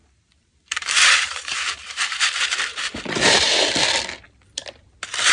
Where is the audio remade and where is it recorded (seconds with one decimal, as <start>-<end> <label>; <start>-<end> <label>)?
0.0-0.4 recorded; 0.4-2.9 remade; 2.9-5.3 recorded